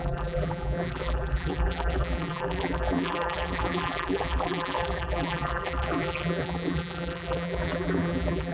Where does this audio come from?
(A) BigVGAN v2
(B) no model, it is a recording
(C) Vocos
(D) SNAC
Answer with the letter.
A